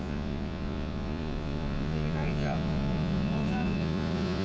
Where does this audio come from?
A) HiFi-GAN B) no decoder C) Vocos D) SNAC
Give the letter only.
C